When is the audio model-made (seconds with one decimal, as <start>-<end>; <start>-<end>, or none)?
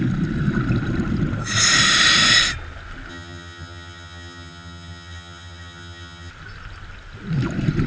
3.1-6.3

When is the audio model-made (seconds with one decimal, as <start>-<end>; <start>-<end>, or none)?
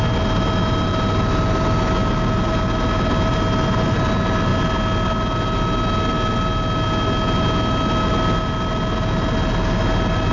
none